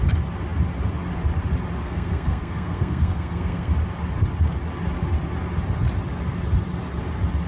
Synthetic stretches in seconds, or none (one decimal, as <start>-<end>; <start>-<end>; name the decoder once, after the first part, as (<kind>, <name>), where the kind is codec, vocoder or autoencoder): 1.8-3.7 (codec, SNAC)